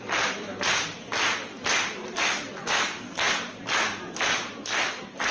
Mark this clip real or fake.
real